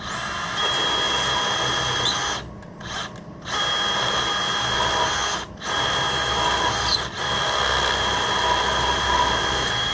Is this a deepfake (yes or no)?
no